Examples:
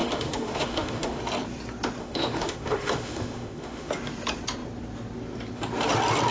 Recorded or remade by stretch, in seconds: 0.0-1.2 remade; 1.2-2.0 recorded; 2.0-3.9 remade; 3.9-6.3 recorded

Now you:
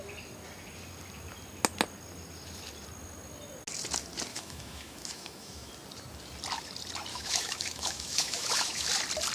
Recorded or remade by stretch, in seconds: 0.0-4.3 recorded; 4.3-5.7 remade; 5.7-7.1 recorded; 7.1-8.9 remade; 8.9-9.3 recorded

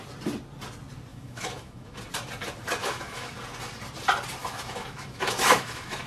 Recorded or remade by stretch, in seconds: 0.0-1.1 recorded; 1.1-2.0 remade; 2.0-2.8 recorded; 2.8-3.3 remade; 3.3-4.4 recorded; 4.4-6.1 remade